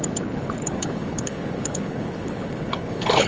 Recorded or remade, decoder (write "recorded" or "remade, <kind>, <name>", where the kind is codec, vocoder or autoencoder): remade, codec, HILCodec